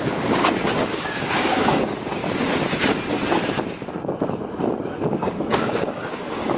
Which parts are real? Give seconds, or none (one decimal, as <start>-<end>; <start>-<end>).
2.2-5.1